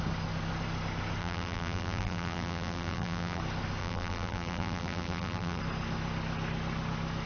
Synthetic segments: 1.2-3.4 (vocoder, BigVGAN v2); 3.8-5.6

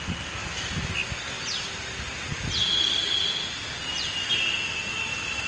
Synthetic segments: none

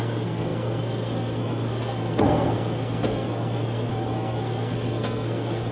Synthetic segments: 0.0-5.7 (codec, SNAC)

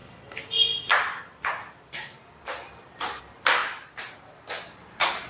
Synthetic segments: 3.6-4.1 (vocoder, BigVGAN v2)

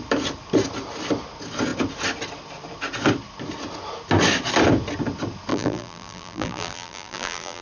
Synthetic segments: 5.5-7.6 (vocoder, BigVGAN v2)

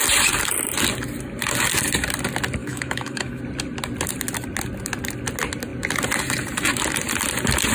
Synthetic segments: 2.6-3.4 (autoencoder, DAC-VAE)

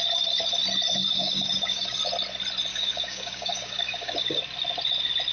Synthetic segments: 1.0-2.0 (codec, DAC); 2.7-4.4

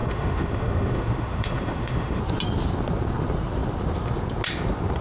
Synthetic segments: 0.0-2.2 (autoencoder, DAC-VAE)